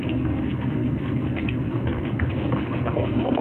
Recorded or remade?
remade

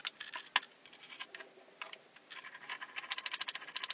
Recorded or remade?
recorded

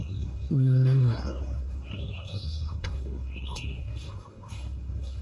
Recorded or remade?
remade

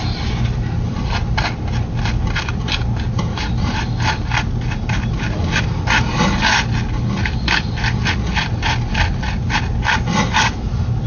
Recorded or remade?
recorded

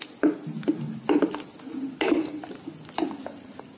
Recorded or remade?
recorded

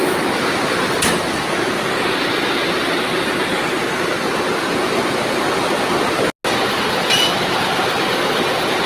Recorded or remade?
recorded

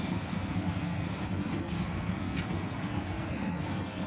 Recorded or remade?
remade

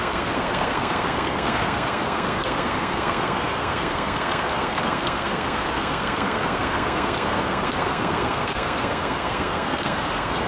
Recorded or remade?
remade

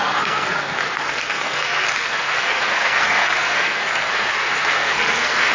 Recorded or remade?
remade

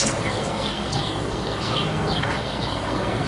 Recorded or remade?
remade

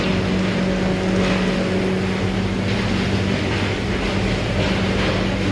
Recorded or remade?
recorded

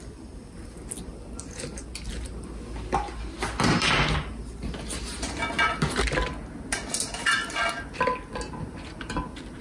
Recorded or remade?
recorded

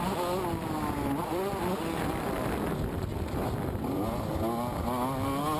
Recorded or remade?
recorded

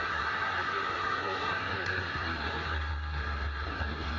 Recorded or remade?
remade